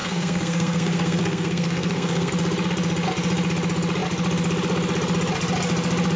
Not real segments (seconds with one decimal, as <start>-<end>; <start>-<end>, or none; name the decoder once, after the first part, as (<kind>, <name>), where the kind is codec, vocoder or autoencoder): 0.0-2.3 (codec, SNAC)